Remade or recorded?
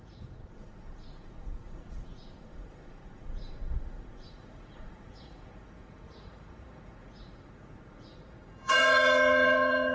remade